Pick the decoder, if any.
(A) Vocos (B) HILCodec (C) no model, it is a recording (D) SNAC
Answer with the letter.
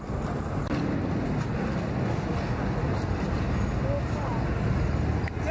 C